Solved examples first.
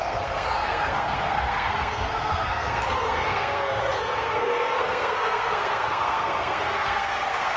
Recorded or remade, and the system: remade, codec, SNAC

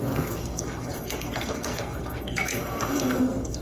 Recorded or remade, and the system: remade, codec, SNAC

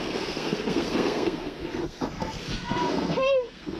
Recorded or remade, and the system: remade, codec, SNAC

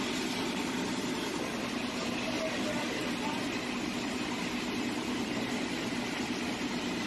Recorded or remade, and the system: recorded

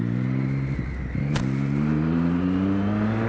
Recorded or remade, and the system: recorded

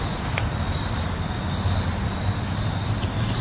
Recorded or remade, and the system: recorded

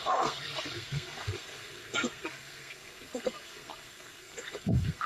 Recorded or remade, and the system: remade, codec, SNAC